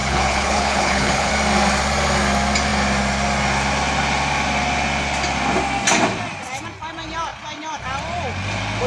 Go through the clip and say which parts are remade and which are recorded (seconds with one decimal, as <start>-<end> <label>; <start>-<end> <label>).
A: 0.0-1.3 remade; 1.3-8.9 recorded